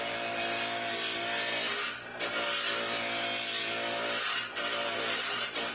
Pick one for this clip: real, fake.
real